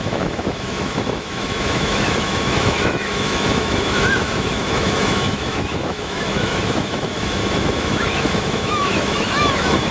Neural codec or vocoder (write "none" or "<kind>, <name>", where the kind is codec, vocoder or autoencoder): autoencoder, DAC-VAE